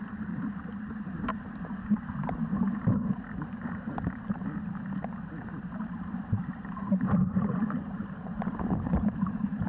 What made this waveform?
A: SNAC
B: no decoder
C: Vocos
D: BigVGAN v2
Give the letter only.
D